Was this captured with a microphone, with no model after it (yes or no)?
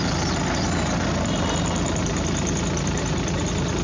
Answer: yes